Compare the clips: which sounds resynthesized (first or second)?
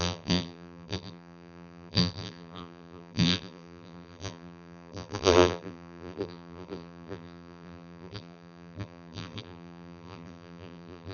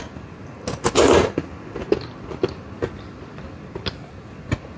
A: first